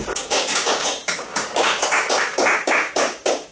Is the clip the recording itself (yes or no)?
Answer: no